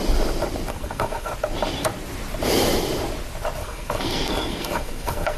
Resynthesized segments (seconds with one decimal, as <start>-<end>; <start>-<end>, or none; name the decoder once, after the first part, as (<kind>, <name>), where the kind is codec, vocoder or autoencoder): 0.7-1.3 (codec, SNAC); 3.6-5.4